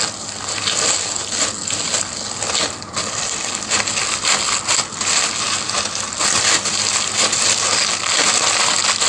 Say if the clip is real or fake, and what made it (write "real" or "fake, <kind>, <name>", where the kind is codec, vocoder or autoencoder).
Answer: real